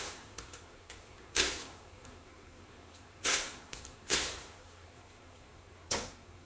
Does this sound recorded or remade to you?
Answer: remade